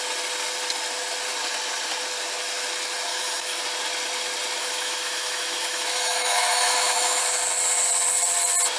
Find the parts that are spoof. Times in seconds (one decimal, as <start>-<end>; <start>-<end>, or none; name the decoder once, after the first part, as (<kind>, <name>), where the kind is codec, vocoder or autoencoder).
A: 3.1-3.6 (autoencoder, DAC-VAE); 4.6-7.2